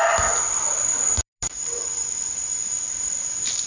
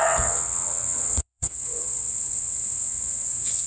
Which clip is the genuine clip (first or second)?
first